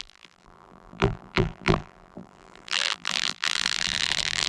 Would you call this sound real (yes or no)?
no